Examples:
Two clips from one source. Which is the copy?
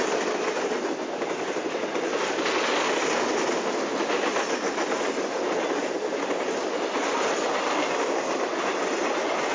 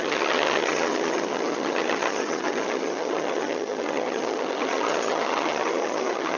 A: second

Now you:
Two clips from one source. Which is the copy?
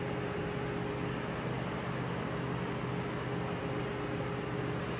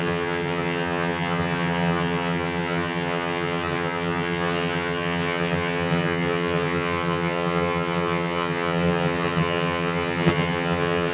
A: second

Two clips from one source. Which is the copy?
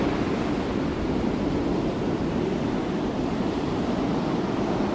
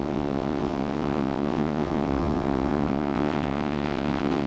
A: second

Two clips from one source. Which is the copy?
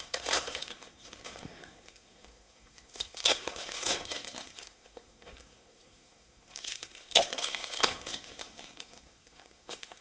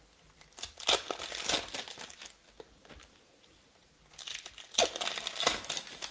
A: first